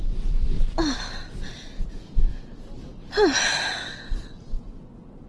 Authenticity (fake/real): real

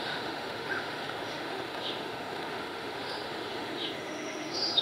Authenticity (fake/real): fake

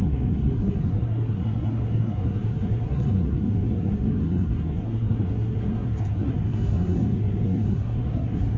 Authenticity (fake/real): fake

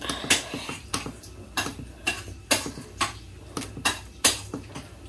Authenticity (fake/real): real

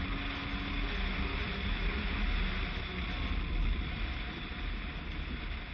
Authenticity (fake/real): real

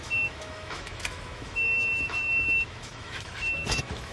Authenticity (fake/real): fake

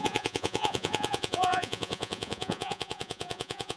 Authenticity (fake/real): fake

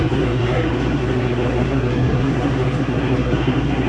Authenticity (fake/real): fake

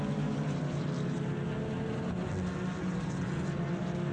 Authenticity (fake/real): real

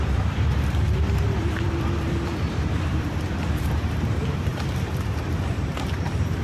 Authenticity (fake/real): fake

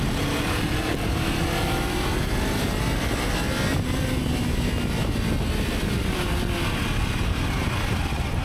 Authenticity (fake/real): real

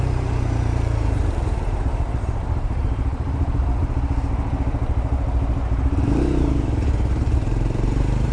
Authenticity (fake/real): fake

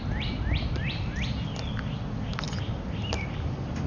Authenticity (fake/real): real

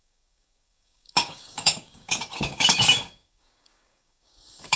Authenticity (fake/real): fake